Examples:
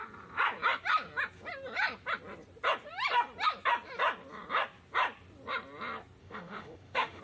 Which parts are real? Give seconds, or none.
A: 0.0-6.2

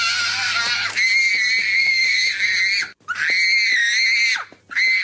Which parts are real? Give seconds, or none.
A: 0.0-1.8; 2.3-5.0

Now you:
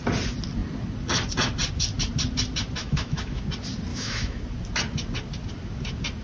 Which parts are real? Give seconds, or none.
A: 0.0-2.8; 3.4-3.9; 4.4-6.2